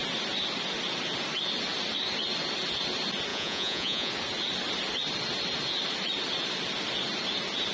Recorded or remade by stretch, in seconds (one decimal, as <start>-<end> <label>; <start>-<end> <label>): 0.0-3.3 recorded; 3.3-4.1 remade; 4.1-7.7 recorded